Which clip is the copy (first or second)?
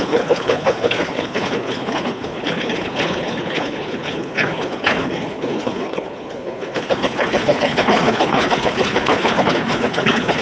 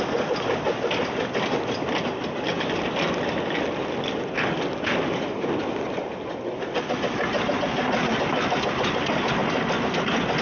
first